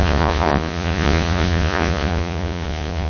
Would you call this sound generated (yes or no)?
yes